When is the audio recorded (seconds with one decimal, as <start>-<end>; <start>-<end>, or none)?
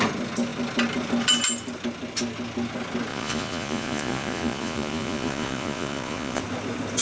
0.0-3.1; 6.4-7.0